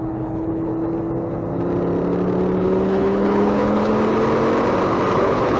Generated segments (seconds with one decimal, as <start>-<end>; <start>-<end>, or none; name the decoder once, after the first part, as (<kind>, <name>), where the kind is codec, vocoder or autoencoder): 0.0-0.7 (codec, HILCodec); 2.6-3.9; 5.1-5.6